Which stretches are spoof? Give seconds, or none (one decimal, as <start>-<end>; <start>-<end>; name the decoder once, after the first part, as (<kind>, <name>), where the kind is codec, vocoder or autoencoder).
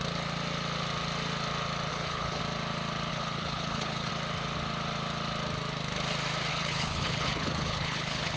1.9-2.4 (codec, HILCodec); 3.1-4.1; 6.5-8.4